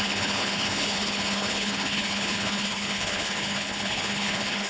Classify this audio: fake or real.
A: fake